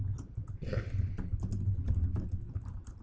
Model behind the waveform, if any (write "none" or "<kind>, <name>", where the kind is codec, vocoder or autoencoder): none